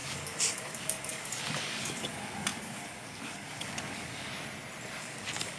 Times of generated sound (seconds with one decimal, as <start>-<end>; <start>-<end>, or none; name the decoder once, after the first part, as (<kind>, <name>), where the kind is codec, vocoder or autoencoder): 0.0-4.3 (codec, DAC); 5.0-5.6